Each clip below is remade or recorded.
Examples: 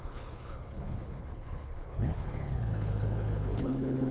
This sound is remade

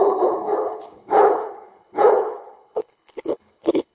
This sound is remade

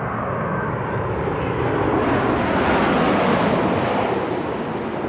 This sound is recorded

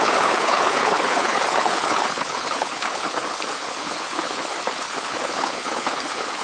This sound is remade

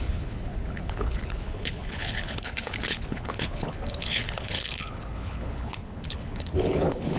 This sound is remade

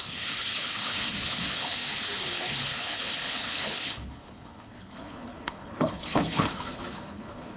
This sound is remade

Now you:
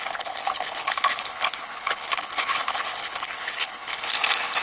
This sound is remade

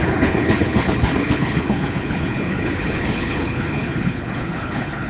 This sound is remade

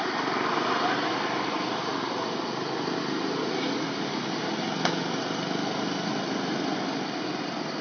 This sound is recorded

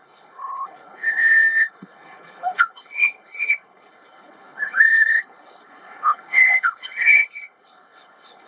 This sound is remade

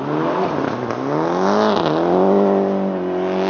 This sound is recorded